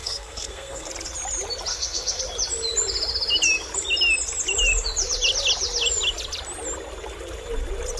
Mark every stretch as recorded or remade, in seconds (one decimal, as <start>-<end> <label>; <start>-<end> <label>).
0.0-0.9 remade; 0.9-1.7 recorded; 1.7-2.2 remade; 2.2-8.0 recorded